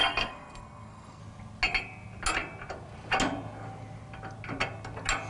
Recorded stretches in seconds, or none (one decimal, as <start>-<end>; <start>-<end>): 1.2-5.3